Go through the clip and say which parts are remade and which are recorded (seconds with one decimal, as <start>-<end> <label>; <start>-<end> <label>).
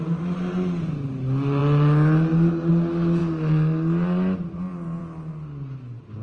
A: 0.0-6.2 recorded